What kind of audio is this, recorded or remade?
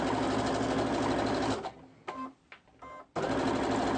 recorded